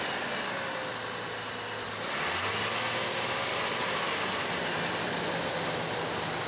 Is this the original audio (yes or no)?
yes